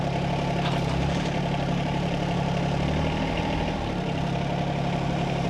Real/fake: fake